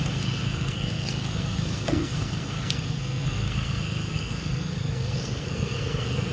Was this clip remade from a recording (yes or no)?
yes